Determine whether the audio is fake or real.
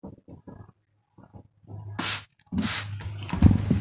real